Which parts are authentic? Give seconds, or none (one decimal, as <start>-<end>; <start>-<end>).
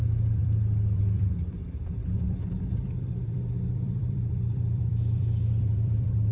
none